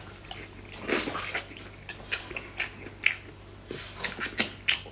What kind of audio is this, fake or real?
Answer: real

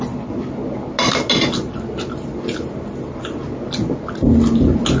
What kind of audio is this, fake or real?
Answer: real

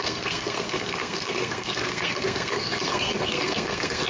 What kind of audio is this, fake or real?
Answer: fake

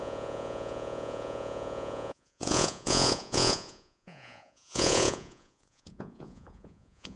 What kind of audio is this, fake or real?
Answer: fake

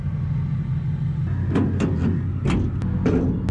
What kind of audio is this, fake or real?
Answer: real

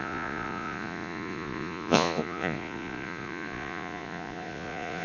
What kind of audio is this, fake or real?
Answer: fake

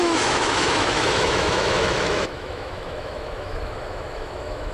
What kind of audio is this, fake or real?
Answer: fake